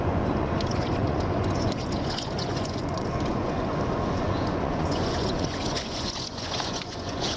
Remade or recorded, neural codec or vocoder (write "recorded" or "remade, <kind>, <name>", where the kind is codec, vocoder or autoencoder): remade, vocoder, Vocos